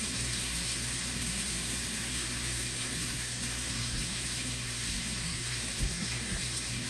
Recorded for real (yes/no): no